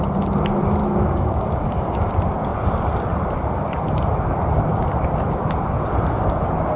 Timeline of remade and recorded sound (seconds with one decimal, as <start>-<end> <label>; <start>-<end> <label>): 0.0-0.8 recorded; 0.8-2.1 remade; 2.1-6.8 recorded